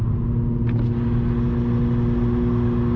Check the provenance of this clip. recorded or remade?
recorded